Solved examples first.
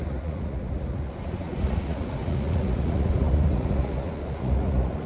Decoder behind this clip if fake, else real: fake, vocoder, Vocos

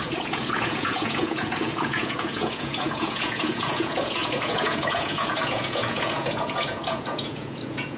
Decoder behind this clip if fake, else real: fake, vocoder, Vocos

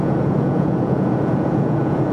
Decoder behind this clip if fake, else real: fake, vocoder, Vocos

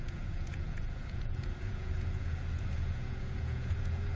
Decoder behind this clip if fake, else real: fake, vocoder, Vocos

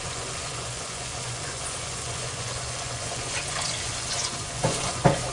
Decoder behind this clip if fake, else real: fake, vocoder, Vocos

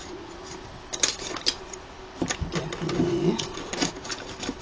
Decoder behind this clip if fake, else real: real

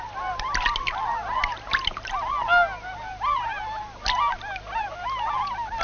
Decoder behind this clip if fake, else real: real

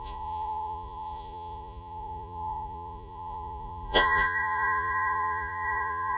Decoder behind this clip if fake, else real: fake, vocoder, Vocos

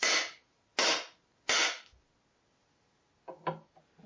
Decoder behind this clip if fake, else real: real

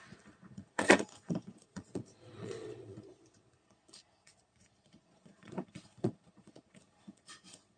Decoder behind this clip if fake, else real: fake, vocoder, Vocos